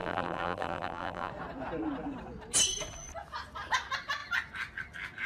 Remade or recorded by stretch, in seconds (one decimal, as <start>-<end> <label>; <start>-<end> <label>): 0.0-1.3 remade; 1.3-5.3 recorded